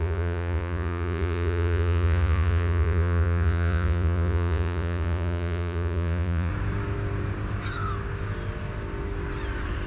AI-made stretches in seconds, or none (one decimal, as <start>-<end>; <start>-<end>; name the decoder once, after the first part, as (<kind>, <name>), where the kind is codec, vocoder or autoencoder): 0.0-6.5 (vocoder, Vocos)

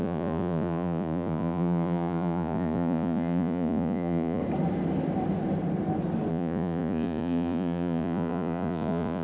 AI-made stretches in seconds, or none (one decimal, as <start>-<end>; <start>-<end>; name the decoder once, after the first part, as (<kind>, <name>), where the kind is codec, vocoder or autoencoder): 0.0-4.4 (vocoder, Vocos); 6.3-9.2

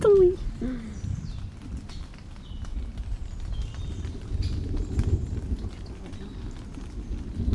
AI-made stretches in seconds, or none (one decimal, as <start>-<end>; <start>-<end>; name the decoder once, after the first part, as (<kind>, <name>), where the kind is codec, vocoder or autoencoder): none

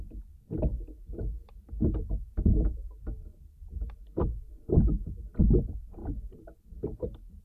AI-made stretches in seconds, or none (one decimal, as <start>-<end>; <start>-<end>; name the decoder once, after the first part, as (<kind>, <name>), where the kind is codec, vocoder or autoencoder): none

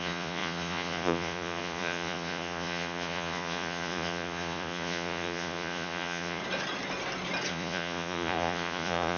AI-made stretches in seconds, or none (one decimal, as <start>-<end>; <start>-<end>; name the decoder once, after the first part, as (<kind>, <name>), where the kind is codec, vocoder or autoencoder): 0.0-6.4 (vocoder, Vocos); 7.5-9.2